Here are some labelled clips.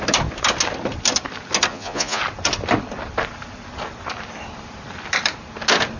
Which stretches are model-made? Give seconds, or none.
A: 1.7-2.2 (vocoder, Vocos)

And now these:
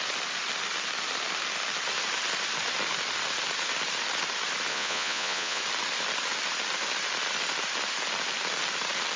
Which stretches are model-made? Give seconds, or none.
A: 4.7-5.6 (vocoder, Vocos)

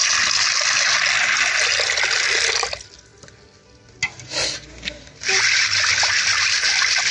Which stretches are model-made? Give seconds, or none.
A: none